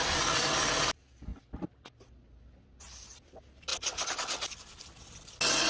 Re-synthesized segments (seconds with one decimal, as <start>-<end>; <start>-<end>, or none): none